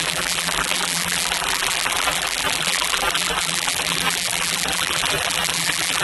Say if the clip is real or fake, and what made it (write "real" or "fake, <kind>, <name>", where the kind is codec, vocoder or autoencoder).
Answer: fake, vocoder, BigVGAN v2